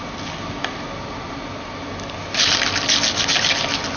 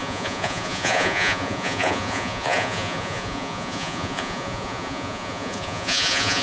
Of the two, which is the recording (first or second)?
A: first